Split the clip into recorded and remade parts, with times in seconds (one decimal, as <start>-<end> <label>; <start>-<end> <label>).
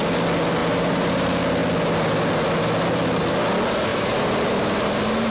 0.0-0.6 recorded; 0.6-1.1 remade; 1.1-3.9 recorded; 3.9-5.3 remade